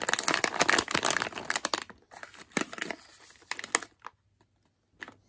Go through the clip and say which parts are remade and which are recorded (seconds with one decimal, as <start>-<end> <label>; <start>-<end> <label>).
0.0-5.3 recorded